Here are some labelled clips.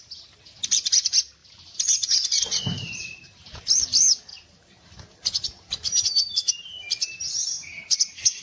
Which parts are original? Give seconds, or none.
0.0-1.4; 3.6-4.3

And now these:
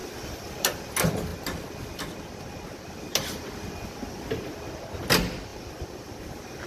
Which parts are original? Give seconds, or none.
0.8-5.5

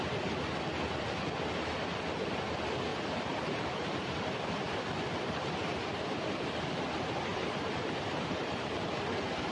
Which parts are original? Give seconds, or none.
0.0-2.9; 4.2-7.3; 8.9-9.5

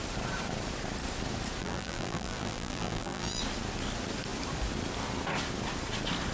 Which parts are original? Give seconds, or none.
0.0-1.6; 3.4-6.3